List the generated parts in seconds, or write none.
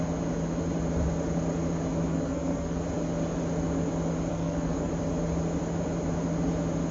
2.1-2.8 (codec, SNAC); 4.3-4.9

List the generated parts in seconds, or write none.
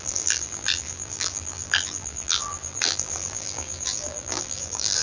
0.0-5.0 (vocoder, BigVGAN v2)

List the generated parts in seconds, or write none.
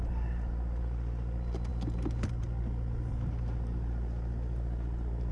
none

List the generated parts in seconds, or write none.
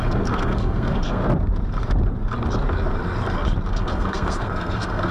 0.0-1.2 (codec, SNAC); 3.7-5.1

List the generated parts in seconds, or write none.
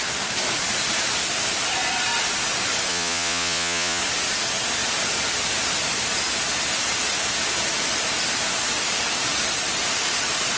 2.9-4.0 (vocoder, Vocos)